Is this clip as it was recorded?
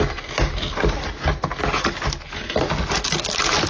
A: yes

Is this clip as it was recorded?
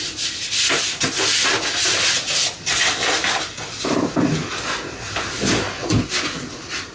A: yes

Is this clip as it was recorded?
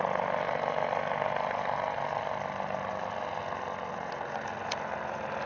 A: yes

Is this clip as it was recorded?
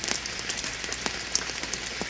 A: yes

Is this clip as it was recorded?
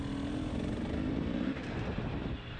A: yes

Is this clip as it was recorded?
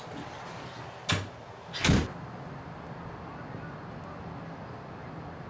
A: yes